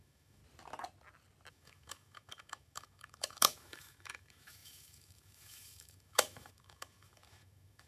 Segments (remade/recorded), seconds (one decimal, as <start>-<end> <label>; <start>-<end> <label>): 0.0-0.4 remade; 0.4-1.5 recorded; 1.5-7.9 remade